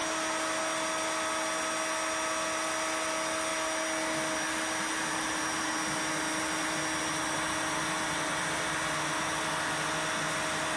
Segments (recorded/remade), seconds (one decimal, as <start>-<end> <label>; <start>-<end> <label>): 0.0-10.8 recorded